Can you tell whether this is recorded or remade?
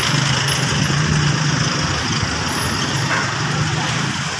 recorded